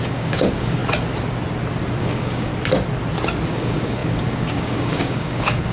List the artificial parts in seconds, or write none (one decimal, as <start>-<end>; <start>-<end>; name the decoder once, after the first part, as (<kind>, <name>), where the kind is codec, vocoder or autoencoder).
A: 0.0-0.8 (codec, DAC); 2.0-2.5; 3.5-5.7